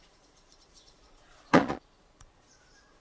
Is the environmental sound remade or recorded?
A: remade